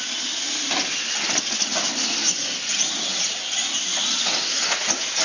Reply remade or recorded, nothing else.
recorded